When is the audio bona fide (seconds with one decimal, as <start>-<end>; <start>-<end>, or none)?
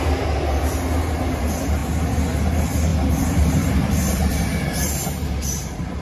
0.0-2.9